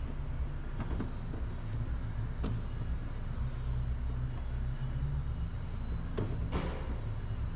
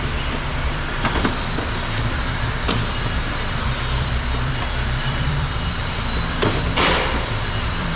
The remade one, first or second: second